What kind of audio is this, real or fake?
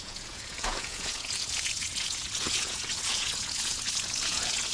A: fake